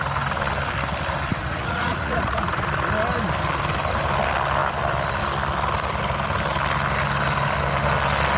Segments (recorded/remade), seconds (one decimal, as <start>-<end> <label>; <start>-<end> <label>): 0.0-1.3 recorded; 1.3-2.7 remade; 2.7-8.4 recorded